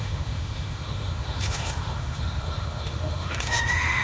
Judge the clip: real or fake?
fake